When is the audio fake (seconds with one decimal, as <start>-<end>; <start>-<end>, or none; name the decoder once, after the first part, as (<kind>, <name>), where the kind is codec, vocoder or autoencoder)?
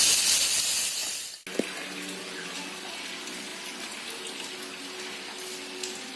none